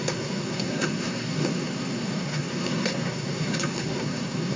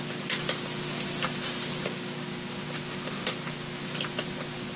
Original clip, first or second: second